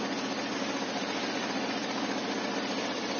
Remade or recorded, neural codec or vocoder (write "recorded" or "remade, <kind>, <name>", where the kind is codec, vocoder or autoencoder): recorded